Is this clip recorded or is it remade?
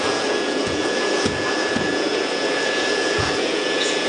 remade